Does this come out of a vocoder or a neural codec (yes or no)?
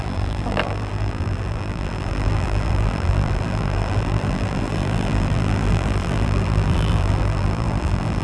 yes